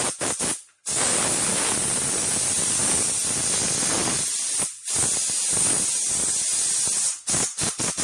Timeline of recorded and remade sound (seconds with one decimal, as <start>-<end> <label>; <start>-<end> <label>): 0.0-8.0 recorded